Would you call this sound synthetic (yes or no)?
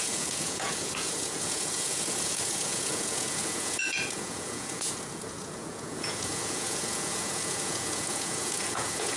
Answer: yes